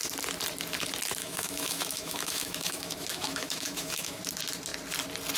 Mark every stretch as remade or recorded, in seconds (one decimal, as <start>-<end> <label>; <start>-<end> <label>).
0.0-1.2 recorded; 1.2-4.2 remade; 4.2-5.4 recorded